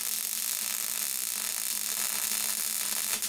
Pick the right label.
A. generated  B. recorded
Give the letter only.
B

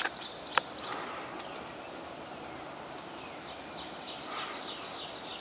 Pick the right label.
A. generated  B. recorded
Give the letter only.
B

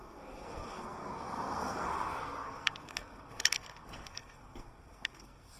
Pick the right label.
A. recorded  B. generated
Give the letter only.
B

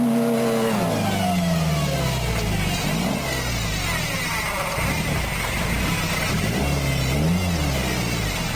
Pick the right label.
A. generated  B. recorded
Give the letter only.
B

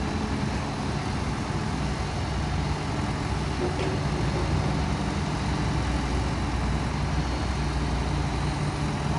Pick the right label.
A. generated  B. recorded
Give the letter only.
B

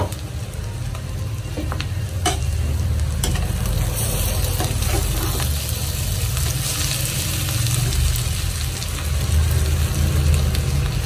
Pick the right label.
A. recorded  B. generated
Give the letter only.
A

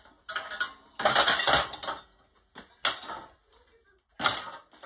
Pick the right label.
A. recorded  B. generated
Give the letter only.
A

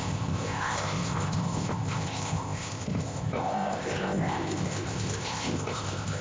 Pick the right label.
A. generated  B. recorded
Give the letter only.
A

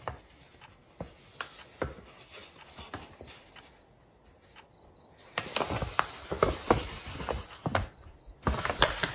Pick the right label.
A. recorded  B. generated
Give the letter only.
A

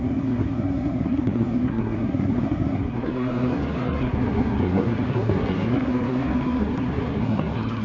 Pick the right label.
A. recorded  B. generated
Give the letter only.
B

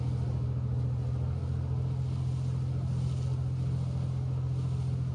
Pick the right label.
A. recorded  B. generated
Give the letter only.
A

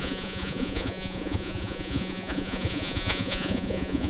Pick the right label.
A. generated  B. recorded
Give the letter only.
A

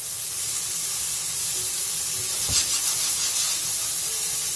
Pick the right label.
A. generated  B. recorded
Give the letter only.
B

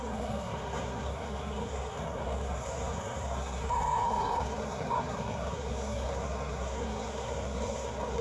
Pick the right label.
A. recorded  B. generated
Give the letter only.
B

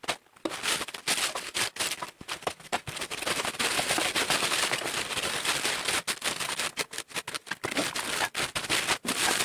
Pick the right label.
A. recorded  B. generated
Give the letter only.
A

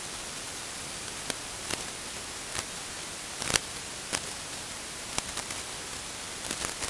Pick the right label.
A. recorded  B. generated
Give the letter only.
A